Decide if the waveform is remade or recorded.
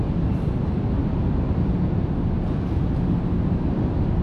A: recorded